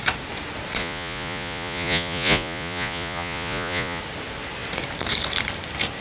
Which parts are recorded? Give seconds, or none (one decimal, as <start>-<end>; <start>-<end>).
0.0-0.8; 4.0-6.0